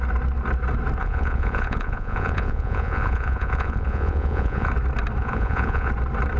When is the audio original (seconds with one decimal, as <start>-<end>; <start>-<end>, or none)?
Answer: 0.0-1.0; 4.7-5.2; 5.9-6.4